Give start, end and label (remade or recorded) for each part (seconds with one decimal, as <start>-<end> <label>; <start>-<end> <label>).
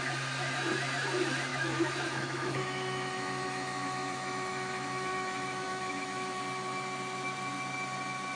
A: 0.0-1.5 recorded; 1.5-6.4 remade; 6.4-8.4 recorded